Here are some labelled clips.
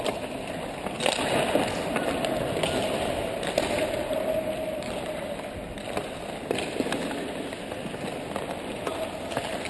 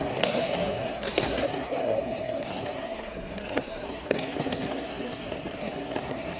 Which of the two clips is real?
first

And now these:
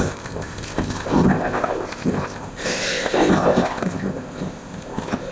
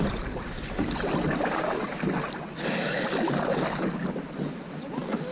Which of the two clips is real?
second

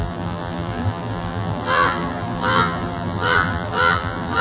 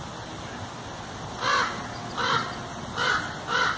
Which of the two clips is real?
second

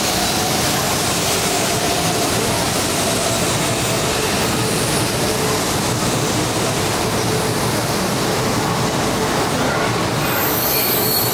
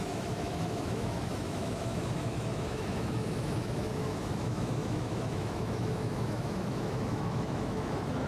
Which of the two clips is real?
first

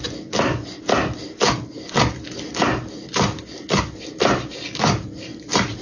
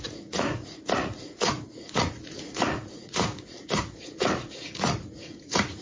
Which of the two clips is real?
first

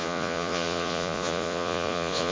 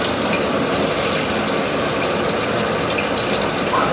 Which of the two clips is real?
second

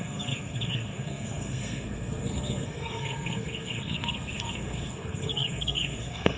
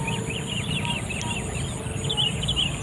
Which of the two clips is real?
second